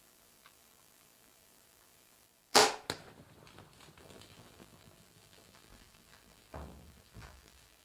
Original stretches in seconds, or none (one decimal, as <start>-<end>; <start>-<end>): 2.6-4.0